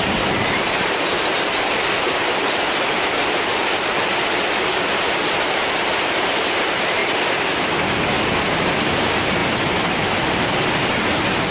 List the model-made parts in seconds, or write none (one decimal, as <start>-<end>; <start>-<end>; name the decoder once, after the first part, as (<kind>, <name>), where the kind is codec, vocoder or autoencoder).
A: 0.0-1.1 (vocoder, BigVGAN v2); 1.9-3.5; 5.3-7.0; 8.2-9.4; 10.3-11.5